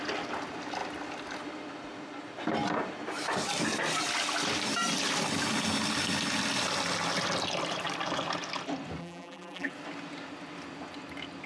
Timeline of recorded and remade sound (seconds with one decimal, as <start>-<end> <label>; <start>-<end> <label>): 0.0-9.0 recorded; 9.0-9.7 remade; 9.7-11.5 recorded